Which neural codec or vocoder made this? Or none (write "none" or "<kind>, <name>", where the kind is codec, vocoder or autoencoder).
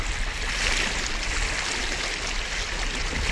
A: none